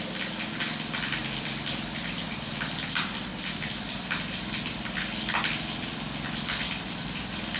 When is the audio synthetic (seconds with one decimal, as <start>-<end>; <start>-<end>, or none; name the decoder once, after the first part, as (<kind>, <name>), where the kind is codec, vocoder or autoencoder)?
1.2-2.5 (vocoder, BigVGAN v2); 3.3-7.6